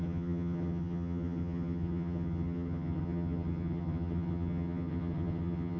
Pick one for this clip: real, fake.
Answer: fake